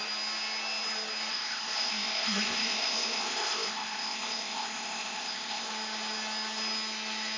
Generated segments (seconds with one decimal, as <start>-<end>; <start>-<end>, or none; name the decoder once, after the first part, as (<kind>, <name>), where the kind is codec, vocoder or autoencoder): 1.3-5.7 (codec, ZipCodec)

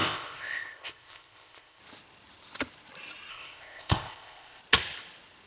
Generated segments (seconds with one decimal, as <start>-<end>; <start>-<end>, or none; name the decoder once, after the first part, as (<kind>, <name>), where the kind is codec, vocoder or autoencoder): 0.0-1.8 (codec, ZipCodec); 3.3-4.6

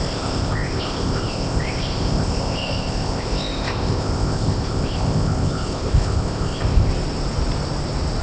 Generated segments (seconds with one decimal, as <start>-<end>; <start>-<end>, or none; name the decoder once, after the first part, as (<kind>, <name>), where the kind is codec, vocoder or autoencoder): 0.0-6.9 (codec, ZipCodec)

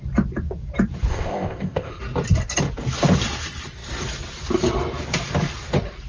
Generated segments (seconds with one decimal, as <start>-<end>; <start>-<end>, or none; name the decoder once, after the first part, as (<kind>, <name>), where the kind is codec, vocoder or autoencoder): 1.1-2.0 (codec, ZipCodec)

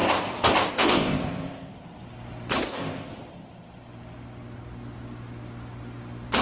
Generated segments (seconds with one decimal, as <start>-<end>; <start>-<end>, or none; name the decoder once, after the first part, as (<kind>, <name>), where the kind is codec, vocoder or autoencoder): 0.7-1.7 (codec, ZipCodec); 2.7-3.1